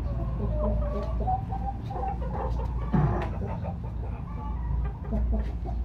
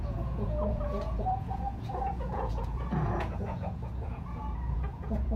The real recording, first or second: first